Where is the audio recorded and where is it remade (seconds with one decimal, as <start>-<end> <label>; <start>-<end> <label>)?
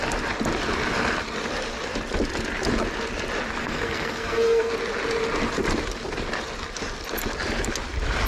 0.0-3.6 recorded; 3.6-4.7 remade; 4.7-8.3 recorded